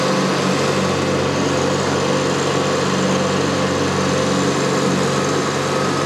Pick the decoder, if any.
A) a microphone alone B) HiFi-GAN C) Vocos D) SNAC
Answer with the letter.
A